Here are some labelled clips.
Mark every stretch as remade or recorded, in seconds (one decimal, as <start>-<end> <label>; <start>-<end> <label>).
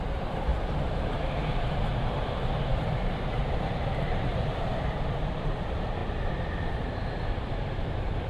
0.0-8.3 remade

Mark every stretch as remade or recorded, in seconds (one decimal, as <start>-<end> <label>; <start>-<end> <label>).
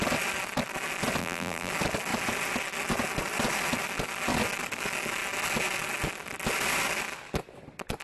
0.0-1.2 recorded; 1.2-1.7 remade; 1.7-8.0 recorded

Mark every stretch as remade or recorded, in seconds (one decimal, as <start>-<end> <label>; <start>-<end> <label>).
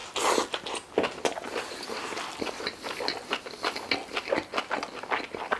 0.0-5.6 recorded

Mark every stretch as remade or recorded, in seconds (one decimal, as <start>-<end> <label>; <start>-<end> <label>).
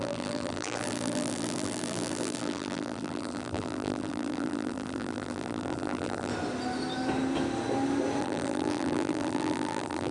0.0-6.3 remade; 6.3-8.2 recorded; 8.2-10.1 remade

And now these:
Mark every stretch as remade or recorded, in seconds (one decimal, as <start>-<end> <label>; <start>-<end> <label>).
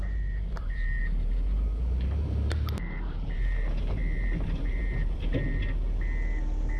0.0-5.6 remade; 5.6-6.8 recorded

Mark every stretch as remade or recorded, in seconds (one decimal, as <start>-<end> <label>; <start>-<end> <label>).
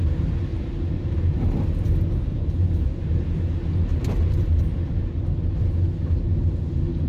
0.0-0.5 recorded; 0.5-1.4 remade; 1.4-2.3 recorded; 2.3-3.5 remade; 3.5-7.1 recorded